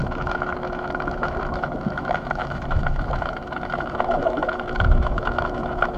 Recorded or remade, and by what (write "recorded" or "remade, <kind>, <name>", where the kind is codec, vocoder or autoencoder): remade, autoencoder, DAC-VAE